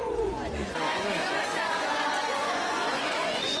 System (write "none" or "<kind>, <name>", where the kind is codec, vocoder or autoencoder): vocoder, Vocos